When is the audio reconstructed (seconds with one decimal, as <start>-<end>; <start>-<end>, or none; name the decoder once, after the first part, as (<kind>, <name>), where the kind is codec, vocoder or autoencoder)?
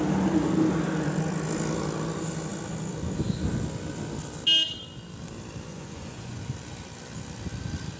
5.7-6.4 (vocoder, Vocos)